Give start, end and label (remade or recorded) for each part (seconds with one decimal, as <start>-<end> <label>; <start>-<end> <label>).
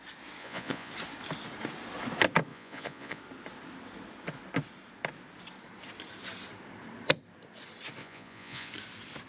0.0-0.4 recorded; 0.4-0.9 remade; 0.9-2.5 recorded; 2.5-3.2 remade; 3.2-8.0 recorded; 8.0-8.7 remade; 8.7-9.3 recorded